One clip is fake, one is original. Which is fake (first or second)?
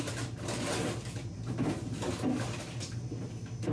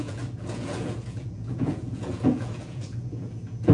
second